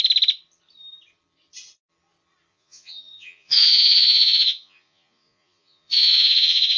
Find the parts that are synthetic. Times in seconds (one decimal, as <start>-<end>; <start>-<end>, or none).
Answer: 2.5-6.8